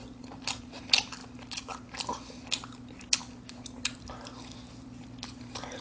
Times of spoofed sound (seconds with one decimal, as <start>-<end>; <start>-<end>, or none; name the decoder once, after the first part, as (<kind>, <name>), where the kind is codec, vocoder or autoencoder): none